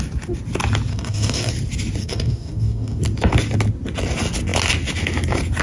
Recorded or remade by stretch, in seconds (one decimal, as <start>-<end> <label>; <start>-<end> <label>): 0.0-0.9 recorded; 0.9-1.5 remade; 1.5-2.0 recorded; 2.0-3.0 remade; 3.0-5.6 recorded